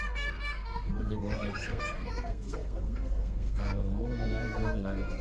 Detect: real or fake fake